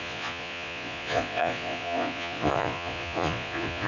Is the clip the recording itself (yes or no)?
no